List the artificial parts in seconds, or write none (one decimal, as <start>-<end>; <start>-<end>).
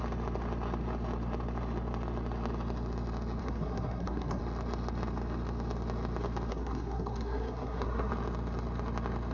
3.4-4.4; 6.5-8.1